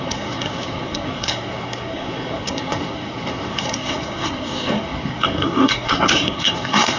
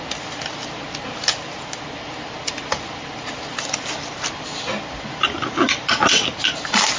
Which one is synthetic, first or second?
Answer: first